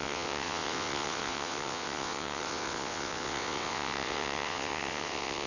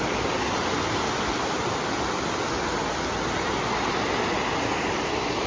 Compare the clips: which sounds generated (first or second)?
first